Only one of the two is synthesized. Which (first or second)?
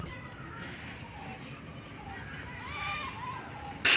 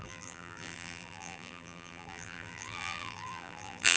second